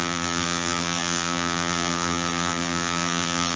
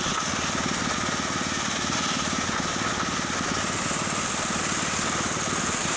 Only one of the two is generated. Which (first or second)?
first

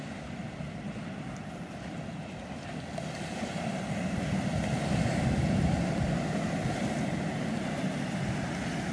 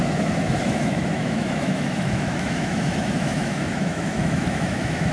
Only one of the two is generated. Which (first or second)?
second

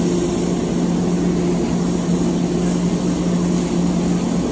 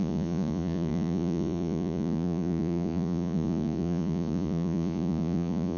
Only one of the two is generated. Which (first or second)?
second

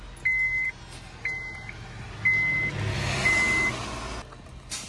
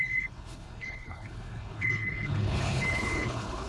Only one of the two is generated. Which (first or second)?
second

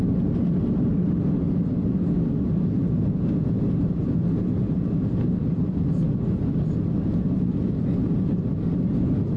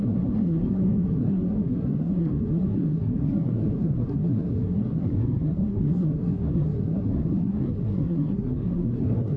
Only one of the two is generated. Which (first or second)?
second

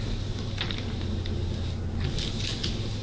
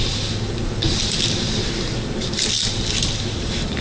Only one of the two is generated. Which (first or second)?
second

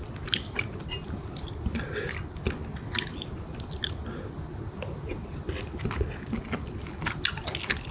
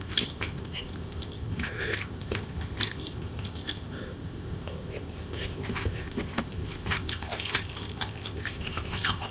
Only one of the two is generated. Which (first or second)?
second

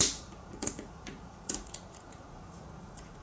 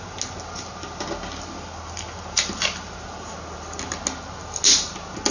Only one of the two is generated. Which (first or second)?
first